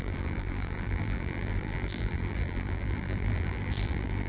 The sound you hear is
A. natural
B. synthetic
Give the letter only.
B